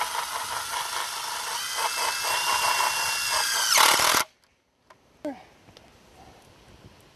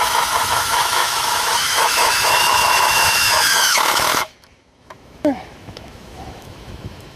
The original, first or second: first